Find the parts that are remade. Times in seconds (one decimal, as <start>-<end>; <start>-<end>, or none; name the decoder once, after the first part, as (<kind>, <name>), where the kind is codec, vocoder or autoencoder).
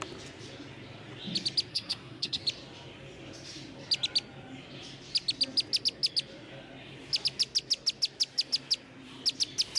1.7-2.4 (codec, SNAC)